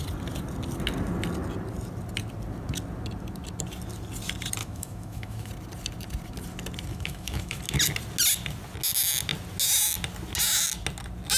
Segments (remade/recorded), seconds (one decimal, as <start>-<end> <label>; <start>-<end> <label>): 0.0-4.6 recorded; 4.6-5.5 remade; 5.5-6.9 recorded; 6.9-7.6 remade; 7.6-11.4 recorded